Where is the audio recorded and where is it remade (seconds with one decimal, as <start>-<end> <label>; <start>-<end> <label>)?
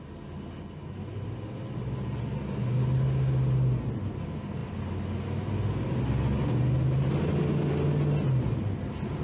0.0-9.2 recorded